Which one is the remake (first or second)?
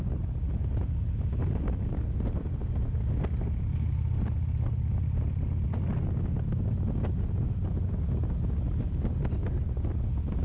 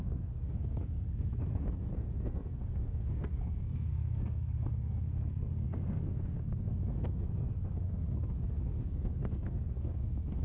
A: second